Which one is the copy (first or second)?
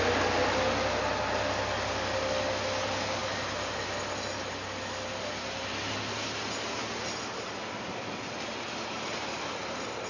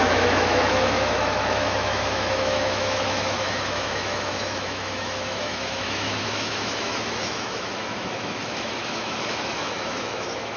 second